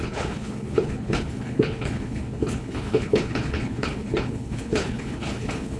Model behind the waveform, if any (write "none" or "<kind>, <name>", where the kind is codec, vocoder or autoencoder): codec, HILCodec